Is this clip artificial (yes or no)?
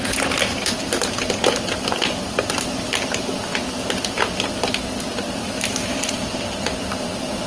no